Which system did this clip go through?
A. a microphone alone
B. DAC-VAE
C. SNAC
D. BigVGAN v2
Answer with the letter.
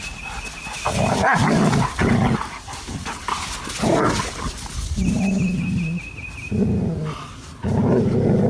A